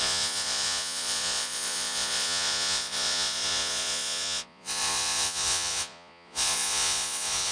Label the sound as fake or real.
fake